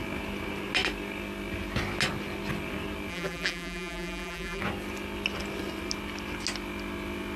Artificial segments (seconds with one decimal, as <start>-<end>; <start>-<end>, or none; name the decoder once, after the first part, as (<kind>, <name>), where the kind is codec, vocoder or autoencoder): 3.1-4.6 (vocoder, BigVGAN v2)